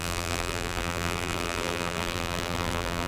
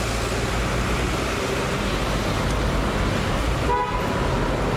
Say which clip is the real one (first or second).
second